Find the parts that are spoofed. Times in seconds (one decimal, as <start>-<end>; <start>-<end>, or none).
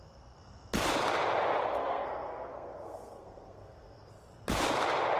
1.7-4.1